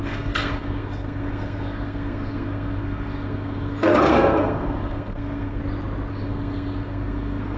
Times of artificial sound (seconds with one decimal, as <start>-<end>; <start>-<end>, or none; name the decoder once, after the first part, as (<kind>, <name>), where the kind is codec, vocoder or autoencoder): 0.0-5.6 (codec, SNAC); 6.1-7.6